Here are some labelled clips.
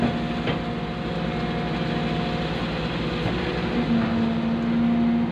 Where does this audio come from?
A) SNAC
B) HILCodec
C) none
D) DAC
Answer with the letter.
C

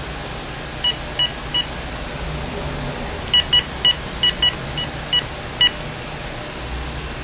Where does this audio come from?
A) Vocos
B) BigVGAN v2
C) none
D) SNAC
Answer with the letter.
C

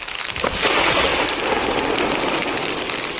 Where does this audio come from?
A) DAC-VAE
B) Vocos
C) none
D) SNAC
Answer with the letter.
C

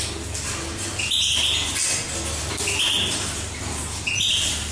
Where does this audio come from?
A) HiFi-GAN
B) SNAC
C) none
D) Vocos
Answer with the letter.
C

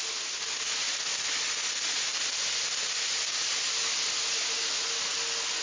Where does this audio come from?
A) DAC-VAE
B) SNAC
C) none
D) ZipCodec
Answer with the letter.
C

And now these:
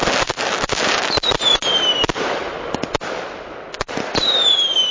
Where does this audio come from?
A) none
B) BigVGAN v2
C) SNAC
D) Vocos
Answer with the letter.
A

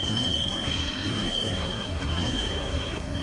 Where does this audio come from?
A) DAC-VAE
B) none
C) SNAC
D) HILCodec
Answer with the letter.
C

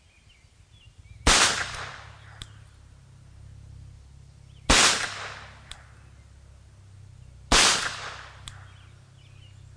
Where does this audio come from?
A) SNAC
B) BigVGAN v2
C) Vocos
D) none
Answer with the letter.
D